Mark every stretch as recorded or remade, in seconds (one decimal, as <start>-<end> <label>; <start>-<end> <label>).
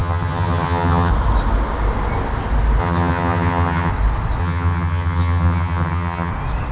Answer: 0.0-1.1 remade; 1.1-2.8 recorded; 2.8-3.9 remade; 3.9-4.4 recorded; 4.4-6.3 remade; 6.3-6.7 recorded